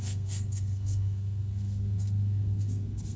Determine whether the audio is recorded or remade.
remade